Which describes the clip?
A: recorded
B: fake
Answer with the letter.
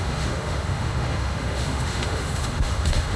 B